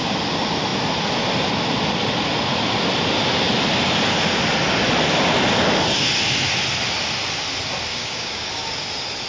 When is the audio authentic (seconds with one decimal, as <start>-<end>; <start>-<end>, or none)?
0.0-7.9; 8.5-9.3

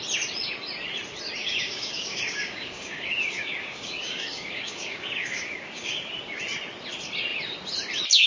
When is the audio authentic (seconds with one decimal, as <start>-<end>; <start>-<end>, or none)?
0.0-1.4; 6.1-8.3

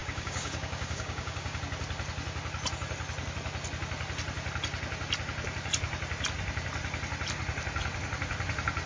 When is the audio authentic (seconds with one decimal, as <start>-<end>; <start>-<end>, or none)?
1.6-8.9

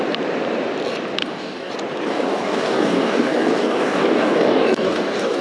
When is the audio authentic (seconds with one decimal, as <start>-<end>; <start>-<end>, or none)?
0.0-1.2; 1.7-2.1